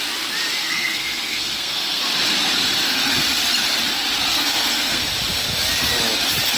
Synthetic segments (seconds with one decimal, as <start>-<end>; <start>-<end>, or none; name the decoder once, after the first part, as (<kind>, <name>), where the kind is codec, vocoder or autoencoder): 0.6-2.0 (codec, SNAC); 4.3-5.0

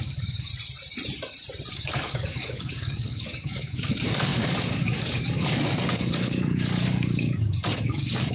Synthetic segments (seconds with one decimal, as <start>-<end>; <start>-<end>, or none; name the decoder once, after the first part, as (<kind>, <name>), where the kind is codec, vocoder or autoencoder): 0.0-0.5 (codec, DAC); 1.7-8.3

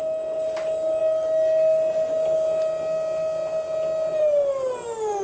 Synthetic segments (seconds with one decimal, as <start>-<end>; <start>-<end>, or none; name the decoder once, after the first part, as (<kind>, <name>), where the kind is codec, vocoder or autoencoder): none

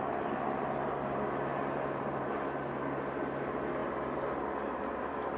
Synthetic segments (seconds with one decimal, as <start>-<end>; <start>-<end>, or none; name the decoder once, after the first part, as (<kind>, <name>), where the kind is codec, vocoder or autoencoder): 1.5-2.3 (vocoder, BigVGAN v2)